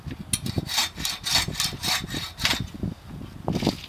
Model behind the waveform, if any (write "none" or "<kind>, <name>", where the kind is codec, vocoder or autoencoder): none